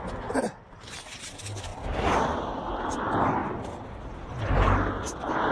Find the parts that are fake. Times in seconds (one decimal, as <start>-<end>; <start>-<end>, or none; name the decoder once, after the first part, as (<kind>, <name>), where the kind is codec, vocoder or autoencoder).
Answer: none